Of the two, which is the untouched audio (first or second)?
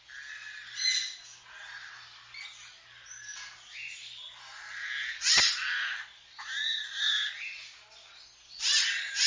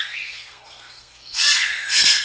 first